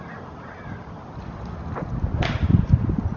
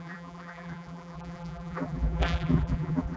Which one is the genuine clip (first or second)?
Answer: first